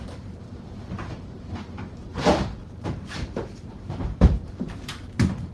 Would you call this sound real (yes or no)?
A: no